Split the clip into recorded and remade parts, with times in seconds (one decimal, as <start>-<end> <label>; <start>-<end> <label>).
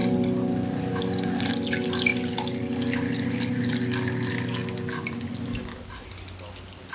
0.0-2.1 recorded; 2.1-4.3 remade; 4.3-6.9 recorded